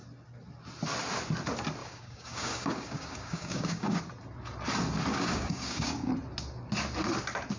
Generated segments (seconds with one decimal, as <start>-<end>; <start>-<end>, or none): 1.8-4.0; 5.1-6.1